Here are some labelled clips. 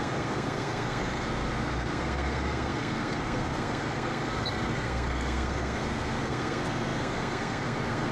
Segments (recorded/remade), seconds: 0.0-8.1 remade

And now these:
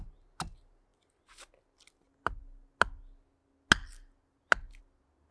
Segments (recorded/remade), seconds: 0.0-5.3 recorded